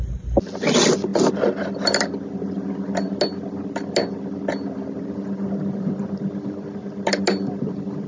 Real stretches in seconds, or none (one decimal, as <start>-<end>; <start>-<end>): 0.0-8.1